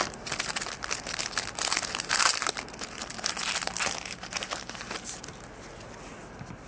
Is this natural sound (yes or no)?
yes